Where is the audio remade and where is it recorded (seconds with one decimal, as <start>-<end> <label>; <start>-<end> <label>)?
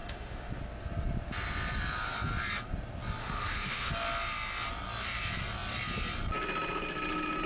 0.0-0.6 remade; 0.6-3.2 recorded; 3.2-3.9 remade; 3.9-7.5 recorded